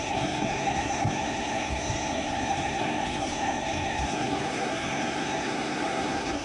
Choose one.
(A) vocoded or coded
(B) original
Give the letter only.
A